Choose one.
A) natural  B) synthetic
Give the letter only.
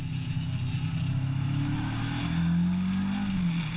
A